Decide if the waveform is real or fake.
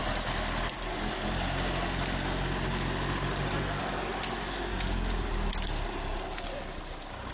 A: real